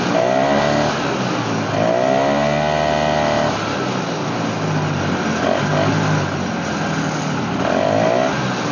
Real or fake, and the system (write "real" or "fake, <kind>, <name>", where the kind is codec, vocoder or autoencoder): real